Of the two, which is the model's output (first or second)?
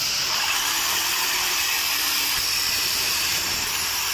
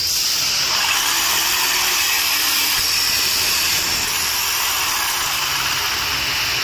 first